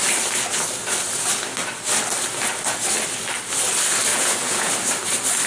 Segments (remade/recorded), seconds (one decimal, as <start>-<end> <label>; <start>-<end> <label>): 0.0-4.1 recorded; 4.1-4.7 remade; 4.7-5.5 recorded

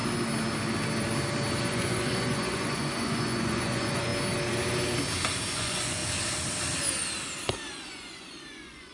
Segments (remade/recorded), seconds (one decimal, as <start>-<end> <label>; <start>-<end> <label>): 0.0-1.7 recorded; 1.7-4.1 remade; 4.1-5.5 recorded; 5.5-6.0 remade; 6.0-7.7 recorded; 7.7-8.9 remade

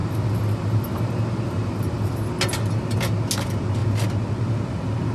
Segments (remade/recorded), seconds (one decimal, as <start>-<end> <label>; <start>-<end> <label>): 0.0-5.1 recorded

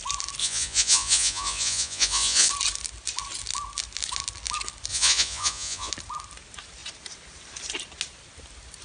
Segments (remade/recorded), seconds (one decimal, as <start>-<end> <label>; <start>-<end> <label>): 0.0-0.4 recorded; 0.4-2.5 remade; 2.5-4.9 recorded; 4.9-5.9 remade; 5.9-8.8 recorded

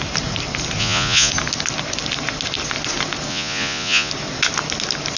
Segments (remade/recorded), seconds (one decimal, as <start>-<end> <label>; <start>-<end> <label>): 0.0-0.8 recorded; 0.8-1.3 remade; 1.3-3.3 recorded; 3.3-4.1 remade; 4.1-5.2 recorded